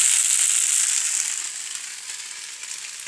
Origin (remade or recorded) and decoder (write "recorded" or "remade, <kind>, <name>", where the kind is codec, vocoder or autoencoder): recorded